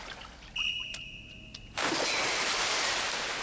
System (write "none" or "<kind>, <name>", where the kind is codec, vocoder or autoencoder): none